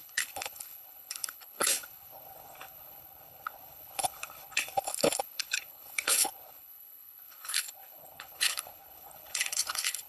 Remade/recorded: remade